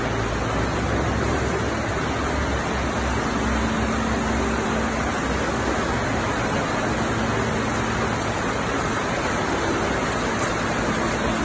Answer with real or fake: real